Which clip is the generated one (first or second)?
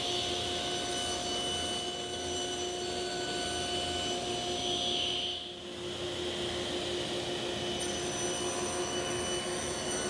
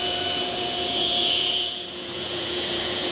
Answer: second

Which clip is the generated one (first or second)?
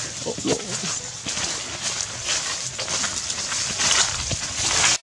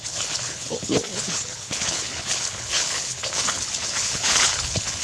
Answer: second